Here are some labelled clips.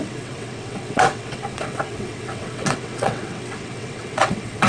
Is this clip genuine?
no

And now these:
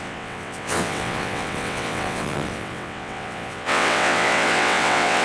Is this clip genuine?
no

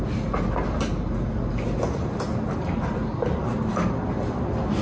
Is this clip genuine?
yes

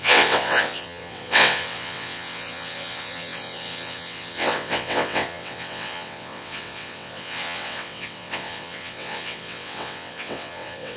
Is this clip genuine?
no